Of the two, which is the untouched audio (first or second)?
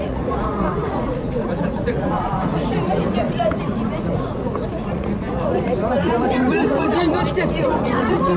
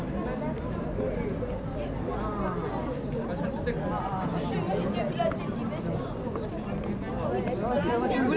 second